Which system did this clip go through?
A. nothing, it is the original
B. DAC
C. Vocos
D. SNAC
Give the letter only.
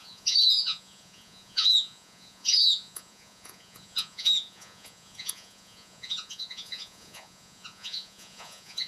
C